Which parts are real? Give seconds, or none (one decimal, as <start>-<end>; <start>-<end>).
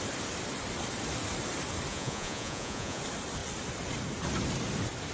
0.0-1.9; 3.0-5.1